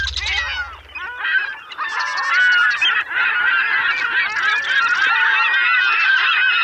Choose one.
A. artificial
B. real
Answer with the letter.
B